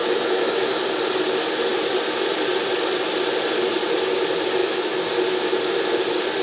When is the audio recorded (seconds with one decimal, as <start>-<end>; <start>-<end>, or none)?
0.7-4.6; 5.1-6.4